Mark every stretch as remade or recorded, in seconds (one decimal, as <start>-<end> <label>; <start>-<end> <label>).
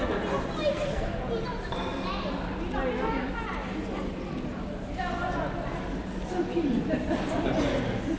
0.0-0.7 recorded; 0.7-1.2 remade; 1.2-8.2 recorded